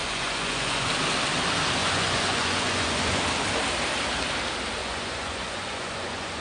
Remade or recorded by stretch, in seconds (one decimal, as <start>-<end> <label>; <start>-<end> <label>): 0.0-0.9 remade; 0.9-1.8 recorded; 1.8-3.2 remade; 3.2-4.8 recorded; 4.8-6.4 remade